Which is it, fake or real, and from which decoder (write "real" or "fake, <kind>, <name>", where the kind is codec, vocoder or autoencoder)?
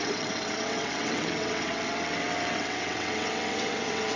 fake, vocoder, WaveNeXt